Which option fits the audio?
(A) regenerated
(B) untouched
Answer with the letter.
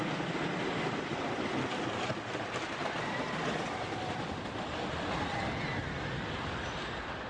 B